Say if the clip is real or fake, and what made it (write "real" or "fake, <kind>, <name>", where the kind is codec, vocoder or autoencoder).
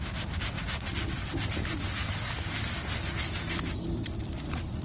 real